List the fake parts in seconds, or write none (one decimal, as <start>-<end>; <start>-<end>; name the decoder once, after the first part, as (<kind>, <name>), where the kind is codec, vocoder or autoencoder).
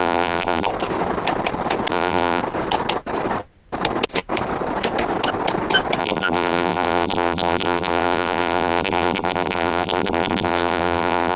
0.0-0.7 (vocoder, BigVGAN v2); 1.9-2.4; 6.0-11.4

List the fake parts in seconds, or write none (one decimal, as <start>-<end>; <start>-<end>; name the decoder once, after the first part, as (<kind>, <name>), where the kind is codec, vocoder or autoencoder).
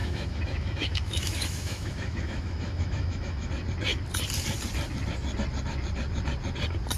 0.0-3.5 (autoencoder, DAC-VAE)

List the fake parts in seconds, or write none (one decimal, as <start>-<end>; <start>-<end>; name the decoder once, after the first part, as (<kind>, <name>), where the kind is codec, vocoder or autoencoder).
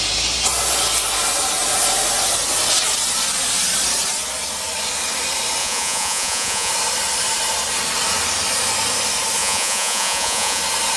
5.6-6.7 (vocoder, Vocos); 9.4-10.6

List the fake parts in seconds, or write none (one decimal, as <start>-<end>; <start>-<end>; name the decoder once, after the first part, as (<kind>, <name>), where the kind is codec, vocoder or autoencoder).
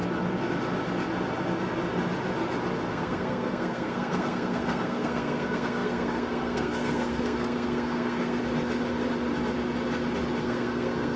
2.9-8.4 (codec, SNAC); 10.4-11.2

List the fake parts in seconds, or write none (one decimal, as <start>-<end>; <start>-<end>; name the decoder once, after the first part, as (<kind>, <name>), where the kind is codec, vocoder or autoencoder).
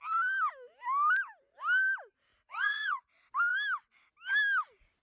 2.3-3.1 (vocoder, Vocos)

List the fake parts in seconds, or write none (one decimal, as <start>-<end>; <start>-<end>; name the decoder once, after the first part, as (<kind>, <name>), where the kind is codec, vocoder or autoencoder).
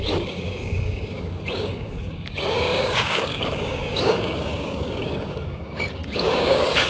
0.0-6.9 (codec, DAC)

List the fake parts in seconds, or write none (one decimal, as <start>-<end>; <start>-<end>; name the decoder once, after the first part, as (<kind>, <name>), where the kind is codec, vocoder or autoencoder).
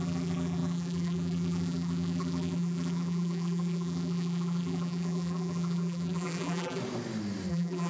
0.0-6.8 (vocoder, BigVGAN v2); 7.5-7.9